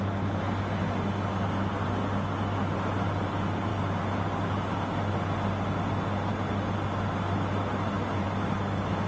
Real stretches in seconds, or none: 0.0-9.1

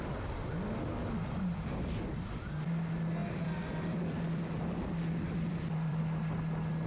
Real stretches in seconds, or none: 0.0-1.2; 1.7-3.2; 6.0-6.9

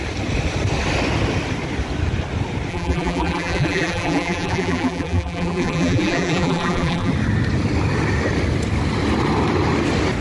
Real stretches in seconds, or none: 0.0-2.7; 7.1-10.2

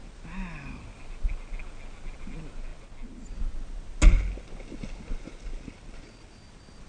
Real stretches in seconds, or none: 0.0-6.9